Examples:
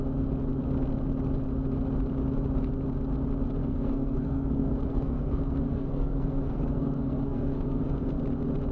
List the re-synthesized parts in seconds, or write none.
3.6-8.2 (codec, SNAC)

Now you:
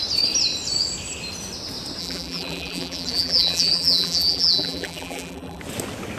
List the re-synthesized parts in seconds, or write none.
2.0-5.6 (vocoder, BigVGAN v2)

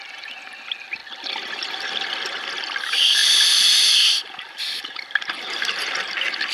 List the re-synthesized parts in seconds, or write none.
3.2-6.1 (vocoder, BigVGAN v2)

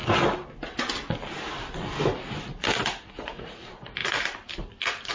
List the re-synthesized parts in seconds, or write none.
3.1-4.0 (vocoder, Vocos)

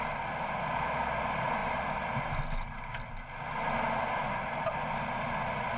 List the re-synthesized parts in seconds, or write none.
none

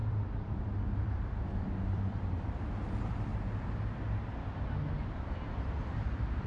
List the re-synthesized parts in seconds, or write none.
0.0-3.3 (vocoder, BigVGAN v2); 5.2-6.5

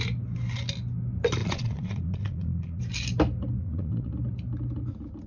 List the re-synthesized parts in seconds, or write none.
1.4-2.8 (vocoder, Vocos); 3.6-4.1

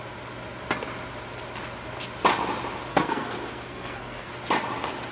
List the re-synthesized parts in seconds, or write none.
2.9-4.3 (codec, SNAC)